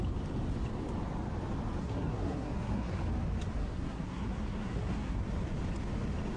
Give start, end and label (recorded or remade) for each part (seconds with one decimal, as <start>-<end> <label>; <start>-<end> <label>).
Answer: 0.0-1.8 recorded; 1.8-3.0 remade; 3.0-3.6 recorded; 3.6-5.2 remade; 5.2-6.4 recorded